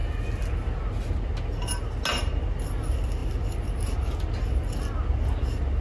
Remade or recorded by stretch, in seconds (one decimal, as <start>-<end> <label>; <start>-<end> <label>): 0.0-5.8 recorded